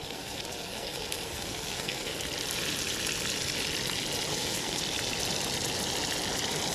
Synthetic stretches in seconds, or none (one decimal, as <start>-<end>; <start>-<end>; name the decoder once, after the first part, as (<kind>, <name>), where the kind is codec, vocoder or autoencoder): 0.0-2.2 (codec, SNAC); 4.3-4.8